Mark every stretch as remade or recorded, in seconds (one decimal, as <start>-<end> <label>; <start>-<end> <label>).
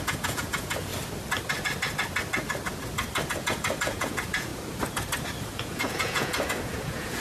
0.0-0.9 remade; 0.9-3.3 recorded; 3.3-4.5 remade; 4.5-5.4 recorded; 5.4-7.2 remade